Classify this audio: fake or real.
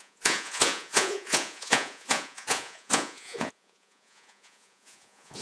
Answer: fake